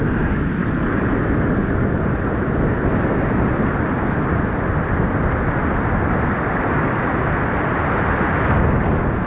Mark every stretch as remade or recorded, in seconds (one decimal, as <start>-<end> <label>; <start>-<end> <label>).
0.0-0.6 recorded; 0.6-1.2 remade; 1.2-9.3 recorded